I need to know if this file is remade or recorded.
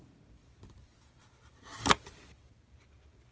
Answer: recorded